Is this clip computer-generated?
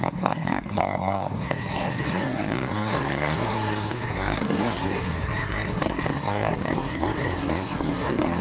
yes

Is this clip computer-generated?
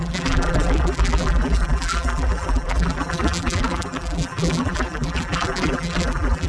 yes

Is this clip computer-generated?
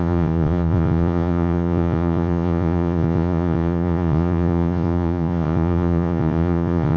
yes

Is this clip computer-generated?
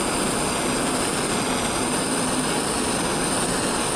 no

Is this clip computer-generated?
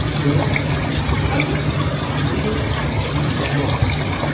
no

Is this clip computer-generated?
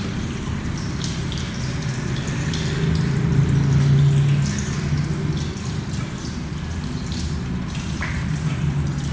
no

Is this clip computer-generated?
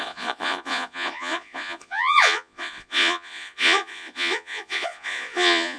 yes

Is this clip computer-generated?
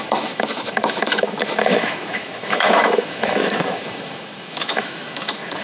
yes